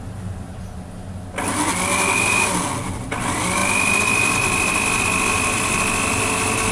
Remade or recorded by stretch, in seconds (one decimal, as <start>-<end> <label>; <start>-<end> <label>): 0.0-6.7 recorded